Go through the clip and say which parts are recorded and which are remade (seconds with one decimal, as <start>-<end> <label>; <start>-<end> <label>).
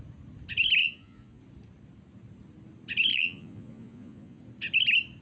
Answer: 0.0-0.8 recorded; 0.8-1.4 remade; 1.4-3.1 recorded; 3.1-4.4 remade; 4.4-5.2 recorded